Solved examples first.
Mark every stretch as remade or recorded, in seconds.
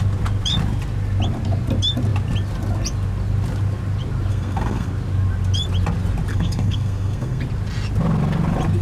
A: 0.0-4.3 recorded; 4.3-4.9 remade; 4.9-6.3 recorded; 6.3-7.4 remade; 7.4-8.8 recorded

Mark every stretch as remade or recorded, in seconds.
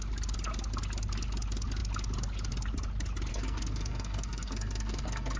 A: 0.0-3.3 recorded; 3.3-5.4 remade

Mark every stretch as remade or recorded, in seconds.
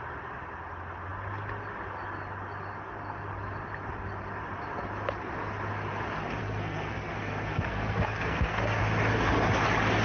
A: 0.0-6.4 recorded; 6.4-8.8 remade; 8.8-10.0 recorded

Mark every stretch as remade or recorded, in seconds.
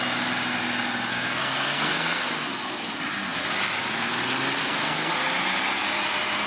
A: 0.0-1.1 recorded; 1.1-2.3 remade; 2.3-4.6 recorded; 4.6-5.1 remade; 5.1-6.5 recorded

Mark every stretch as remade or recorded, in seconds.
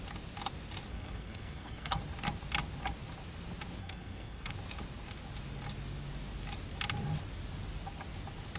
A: 0.0-0.9 recorded; 0.9-2.0 remade; 2.0-3.8 recorded; 3.8-4.5 remade; 4.5-8.6 recorded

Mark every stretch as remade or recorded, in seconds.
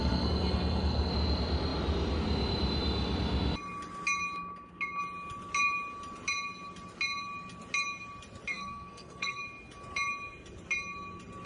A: 0.0-1.1 remade; 1.1-8.5 recorded; 8.5-9.4 remade; 9.4-11.5 recorded